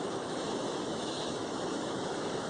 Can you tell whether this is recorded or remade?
remade